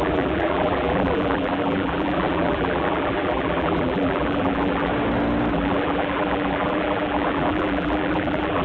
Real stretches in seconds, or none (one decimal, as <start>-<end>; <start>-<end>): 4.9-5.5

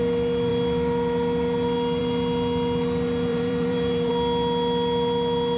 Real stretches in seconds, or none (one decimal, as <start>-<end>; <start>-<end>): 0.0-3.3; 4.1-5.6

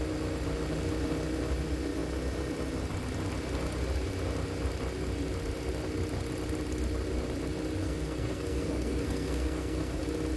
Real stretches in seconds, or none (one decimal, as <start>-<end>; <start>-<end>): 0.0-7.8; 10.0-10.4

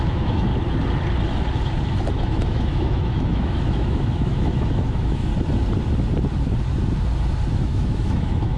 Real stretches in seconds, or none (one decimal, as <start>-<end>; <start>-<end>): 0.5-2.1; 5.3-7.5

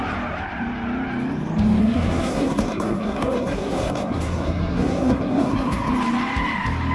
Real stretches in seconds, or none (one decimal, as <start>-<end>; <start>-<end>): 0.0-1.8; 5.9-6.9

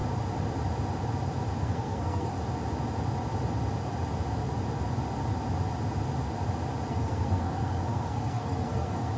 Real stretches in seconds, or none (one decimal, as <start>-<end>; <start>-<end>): 0.0-1.6; 2.3-6.9

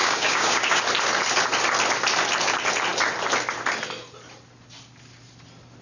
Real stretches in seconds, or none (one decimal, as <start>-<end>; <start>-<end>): 0.8-5.8